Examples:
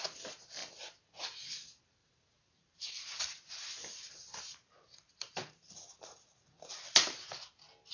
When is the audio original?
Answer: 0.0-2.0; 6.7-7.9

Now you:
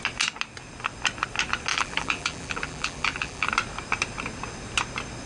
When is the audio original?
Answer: 0.0-1.7; 3.5-5.3

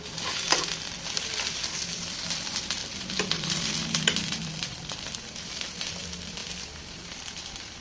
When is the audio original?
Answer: 0.0-2.8; 3.7-4.5; 6.0-7.8